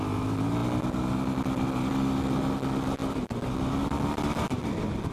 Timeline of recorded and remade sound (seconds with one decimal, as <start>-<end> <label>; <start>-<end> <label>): 0.0-5.1 recorded